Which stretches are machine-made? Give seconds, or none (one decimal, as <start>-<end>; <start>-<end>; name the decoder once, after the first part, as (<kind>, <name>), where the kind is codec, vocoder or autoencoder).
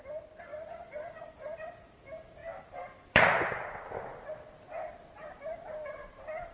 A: 0.5-1.7 (vocoder, BigVGAN v2); 2.4-3.3